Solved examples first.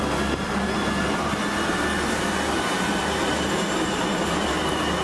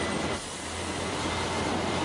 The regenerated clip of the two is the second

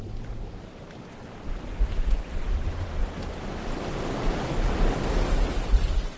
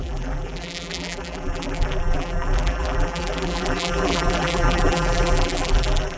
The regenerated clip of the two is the second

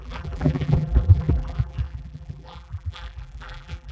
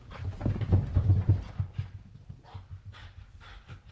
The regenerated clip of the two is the first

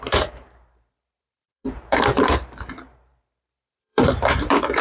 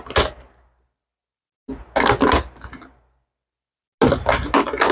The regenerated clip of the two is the first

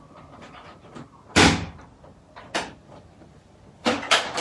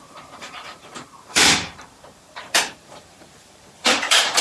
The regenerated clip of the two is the second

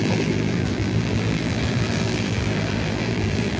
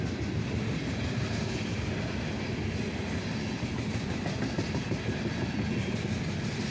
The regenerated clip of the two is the first